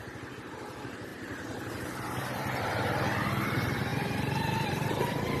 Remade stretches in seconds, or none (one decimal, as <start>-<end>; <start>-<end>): 1.1-2.9; 3.9-5.4